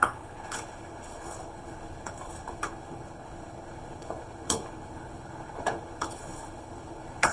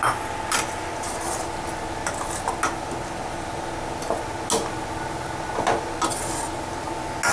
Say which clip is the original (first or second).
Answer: second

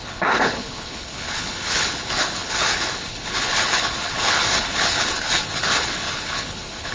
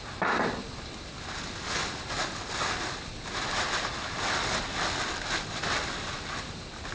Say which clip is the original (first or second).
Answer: second